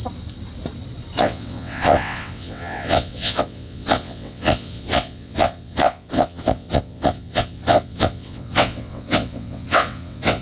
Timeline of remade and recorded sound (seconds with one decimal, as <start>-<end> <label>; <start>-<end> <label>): 0.0-1.2 recorded; 1.2-10.4 remade

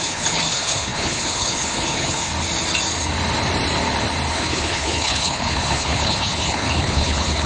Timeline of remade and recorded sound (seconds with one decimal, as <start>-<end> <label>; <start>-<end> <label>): 0.0-2.3 remade; 2.3-4.3 recorded; 4.3-7.5 remade